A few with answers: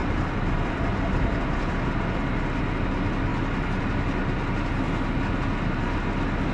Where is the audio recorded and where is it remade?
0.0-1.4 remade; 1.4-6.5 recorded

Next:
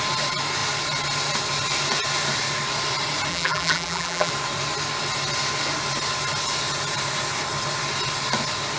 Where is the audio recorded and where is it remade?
0.0-3.3 recorded; 3.3-4.3 remade; 4.3-8.8 recorded

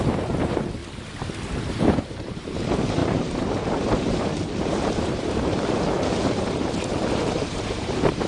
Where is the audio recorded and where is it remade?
0.0-0.8 remade; 0.8-1.5 recorded; 1.5-8.3 remade